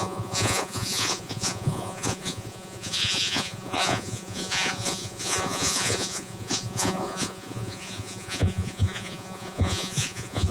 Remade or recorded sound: remade